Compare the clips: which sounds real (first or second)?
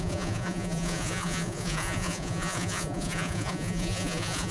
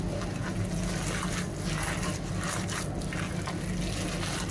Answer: second